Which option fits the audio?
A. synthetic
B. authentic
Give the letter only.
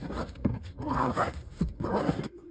A